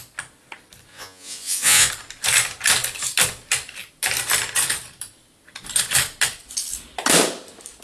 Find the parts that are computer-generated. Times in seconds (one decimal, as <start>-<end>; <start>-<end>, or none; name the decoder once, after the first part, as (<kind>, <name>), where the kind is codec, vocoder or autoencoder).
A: 0.9-1.9 (vocoder, Vocos)